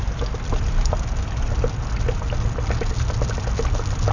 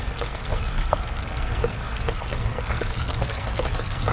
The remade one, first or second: second